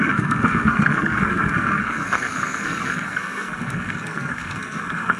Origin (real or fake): fake